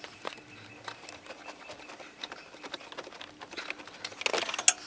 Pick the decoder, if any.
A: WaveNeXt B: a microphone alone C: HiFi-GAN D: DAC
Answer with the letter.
B